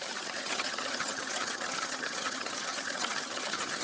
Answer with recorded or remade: remade